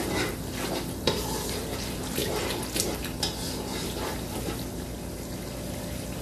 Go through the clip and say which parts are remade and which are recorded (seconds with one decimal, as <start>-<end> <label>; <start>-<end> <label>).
0.0-6.2 recorded